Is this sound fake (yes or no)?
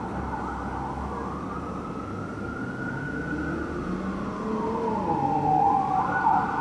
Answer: no